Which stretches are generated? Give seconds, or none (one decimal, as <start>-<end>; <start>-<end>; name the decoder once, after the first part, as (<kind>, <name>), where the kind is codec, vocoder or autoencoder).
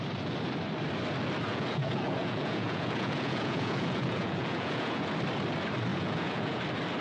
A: 1.5-5.1 (vocoder, Vocos); 5.9-6.6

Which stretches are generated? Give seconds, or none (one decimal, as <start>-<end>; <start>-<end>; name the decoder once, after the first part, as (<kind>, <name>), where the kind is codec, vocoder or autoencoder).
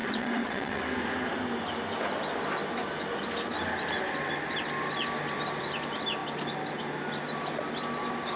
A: 0.0-0.8 (vocoder, WaveNeXt)